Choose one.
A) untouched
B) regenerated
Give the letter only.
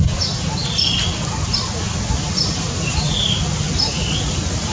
A